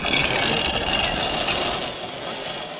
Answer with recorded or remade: recorded